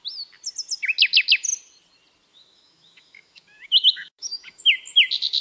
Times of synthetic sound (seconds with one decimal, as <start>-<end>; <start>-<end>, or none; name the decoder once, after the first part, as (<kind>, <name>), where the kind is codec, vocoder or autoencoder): 2.3-4.6 (autoencoder, DAC-VAE)